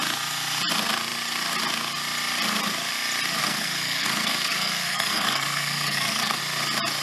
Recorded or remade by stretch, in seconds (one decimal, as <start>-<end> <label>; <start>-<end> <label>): 0.0-3.4 recorded; 3.4-6.4 remade; 6.4-7.0 recorded